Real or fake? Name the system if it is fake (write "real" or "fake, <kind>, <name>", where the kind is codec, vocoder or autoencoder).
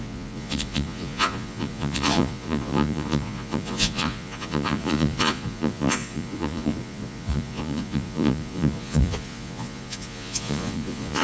fake, vocoder, Vocos